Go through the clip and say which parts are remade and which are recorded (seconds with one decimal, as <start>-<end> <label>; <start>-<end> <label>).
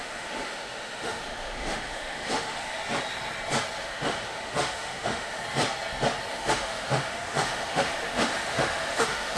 0.0-2.8 remade; 2.8-3.8 recorded; 3.8-5.4 remade; 5.4-6.3 recorded; 6.3-9.4 remade